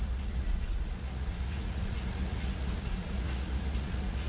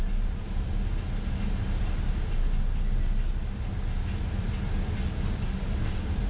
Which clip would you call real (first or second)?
second